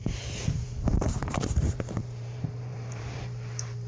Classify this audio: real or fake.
fake